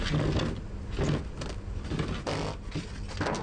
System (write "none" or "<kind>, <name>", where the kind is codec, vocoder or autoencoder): none